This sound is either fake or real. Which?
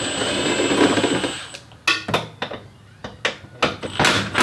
real